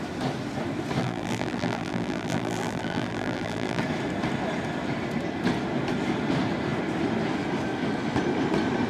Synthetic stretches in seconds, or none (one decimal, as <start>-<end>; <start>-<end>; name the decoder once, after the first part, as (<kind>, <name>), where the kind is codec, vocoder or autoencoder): 1.0-3.8 (vocoder, BigVGAN v2)